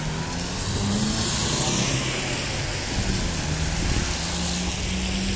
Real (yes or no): yes